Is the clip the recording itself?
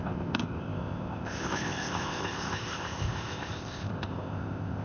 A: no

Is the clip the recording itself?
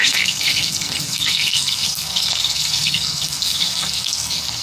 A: no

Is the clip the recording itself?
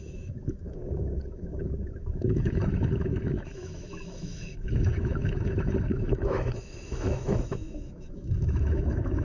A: no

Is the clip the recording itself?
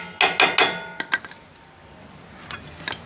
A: yes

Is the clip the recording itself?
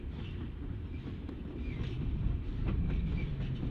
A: yes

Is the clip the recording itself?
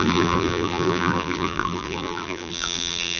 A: no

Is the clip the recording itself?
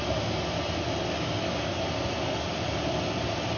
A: yes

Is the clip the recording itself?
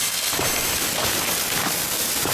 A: yes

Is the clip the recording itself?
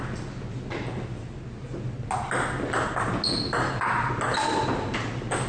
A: yes